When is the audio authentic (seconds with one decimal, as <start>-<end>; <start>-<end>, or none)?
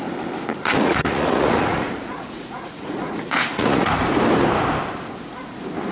0.0-0.5; 3.9-5.9